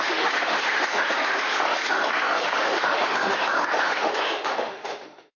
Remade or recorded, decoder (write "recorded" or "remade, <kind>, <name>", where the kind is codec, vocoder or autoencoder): remade, autoencoder, DAC-VAE